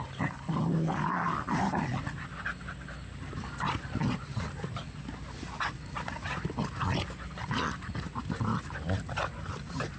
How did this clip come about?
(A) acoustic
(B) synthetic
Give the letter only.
A